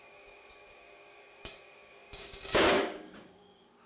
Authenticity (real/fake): fake